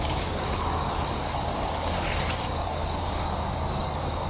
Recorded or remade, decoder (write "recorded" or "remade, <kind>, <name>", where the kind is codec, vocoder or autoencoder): remade, codec, DAC